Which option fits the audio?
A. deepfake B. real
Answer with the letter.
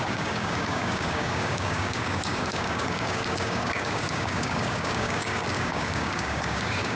A